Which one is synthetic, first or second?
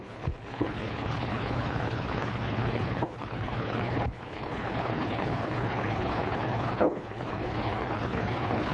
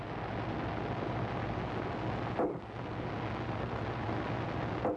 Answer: first